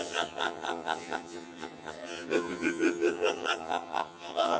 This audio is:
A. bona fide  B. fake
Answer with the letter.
B